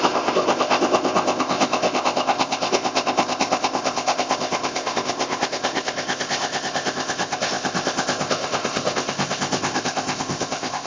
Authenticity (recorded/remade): remade